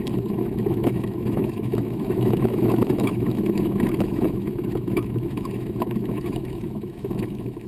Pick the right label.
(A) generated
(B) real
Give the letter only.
A